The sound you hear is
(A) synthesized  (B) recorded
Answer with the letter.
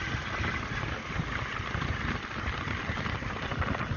B